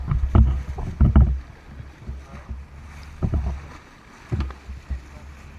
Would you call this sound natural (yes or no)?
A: yes